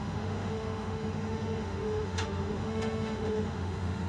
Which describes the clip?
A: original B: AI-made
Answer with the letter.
B